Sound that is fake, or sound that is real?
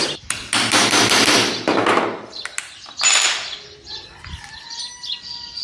real